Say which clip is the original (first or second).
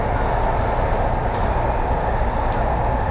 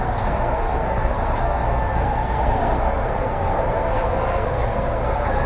first